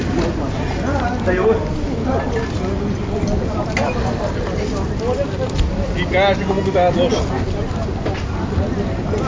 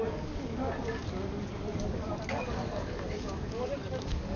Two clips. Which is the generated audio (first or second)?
second